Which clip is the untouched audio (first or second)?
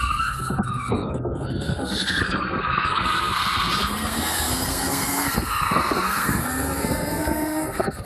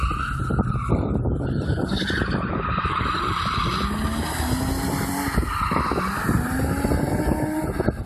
second